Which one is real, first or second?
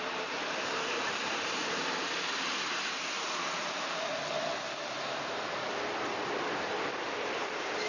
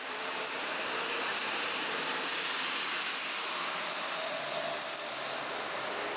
second